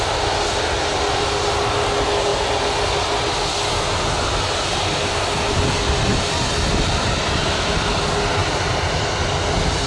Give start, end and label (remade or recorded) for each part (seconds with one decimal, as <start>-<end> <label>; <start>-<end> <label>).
0.0-9.9 recorded